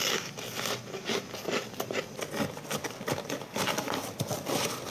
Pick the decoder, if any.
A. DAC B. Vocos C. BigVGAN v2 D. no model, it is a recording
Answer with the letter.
D